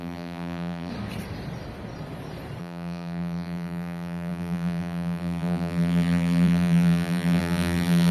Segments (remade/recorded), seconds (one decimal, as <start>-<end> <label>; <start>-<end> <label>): 0.0-0.9 remade; 0.9-2.6 recorded; 2.6-8.1 remade